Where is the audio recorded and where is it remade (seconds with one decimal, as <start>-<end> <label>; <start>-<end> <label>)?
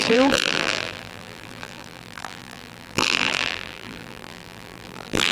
0.0-5.3 remade